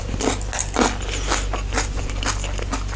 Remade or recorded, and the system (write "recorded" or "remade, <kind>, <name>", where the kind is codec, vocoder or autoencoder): recorded